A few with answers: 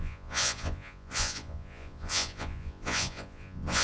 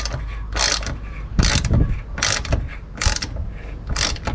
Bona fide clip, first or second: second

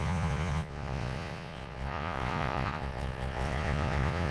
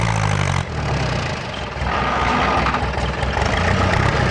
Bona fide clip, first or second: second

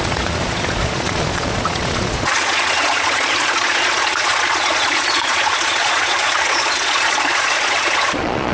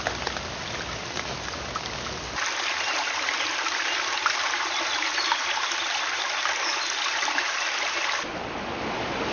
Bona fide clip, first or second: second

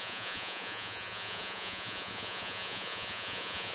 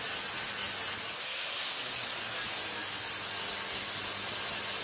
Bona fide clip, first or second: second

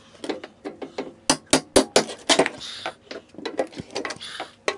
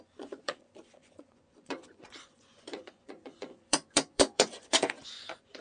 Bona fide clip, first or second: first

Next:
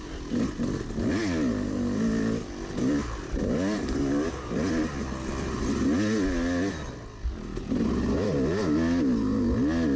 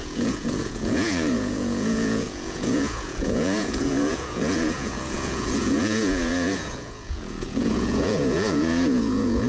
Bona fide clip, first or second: first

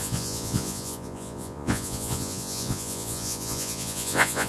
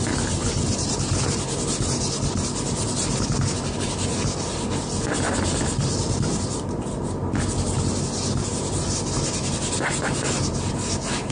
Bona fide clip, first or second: second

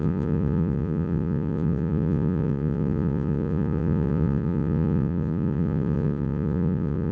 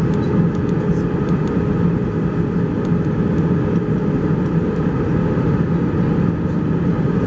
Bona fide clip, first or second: second